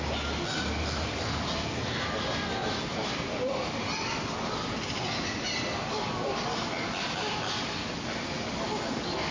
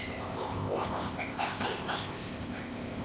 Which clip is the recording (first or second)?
first